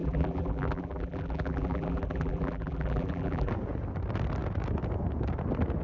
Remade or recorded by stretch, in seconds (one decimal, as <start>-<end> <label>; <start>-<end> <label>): 0.0-3.5 remade; 3.5-5.8 recorded

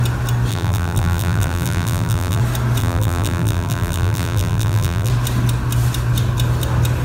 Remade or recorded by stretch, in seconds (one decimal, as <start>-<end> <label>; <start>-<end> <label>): 0.0-0.5 recorded; 0.5-2.4 remade; 2.4-2.8 recorded; 2.8-5.1 remade; 5.1-7.0 recorded

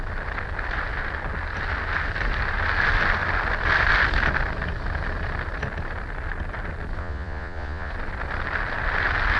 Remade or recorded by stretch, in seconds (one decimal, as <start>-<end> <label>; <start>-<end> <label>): 0.0-7.0 recorded; 7.0-7.9 remade; 7.9-9.4 recorded

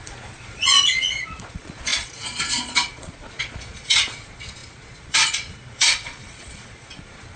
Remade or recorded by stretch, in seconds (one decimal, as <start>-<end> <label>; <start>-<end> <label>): 0.0-7.4 remade

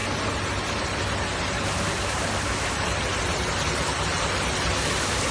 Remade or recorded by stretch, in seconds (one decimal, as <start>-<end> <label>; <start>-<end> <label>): 0.0-5.3 recorded

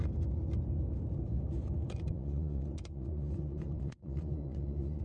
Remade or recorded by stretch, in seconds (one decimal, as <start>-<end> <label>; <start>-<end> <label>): 0.0-1.8 recorded; 1.8-5.0 remade

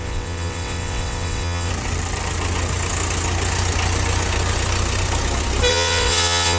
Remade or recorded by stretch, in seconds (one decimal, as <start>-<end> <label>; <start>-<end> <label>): 0.0-1.7 remade; 1.7-5.7 recorded; 5.7-6.6 remade